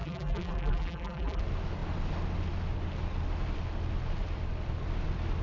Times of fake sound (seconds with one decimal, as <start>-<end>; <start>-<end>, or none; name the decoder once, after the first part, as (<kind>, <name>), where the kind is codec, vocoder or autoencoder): 0.0-1.4 (vocoder, BigVGAN v2)